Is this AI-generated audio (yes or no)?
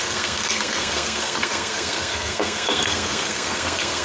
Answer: yes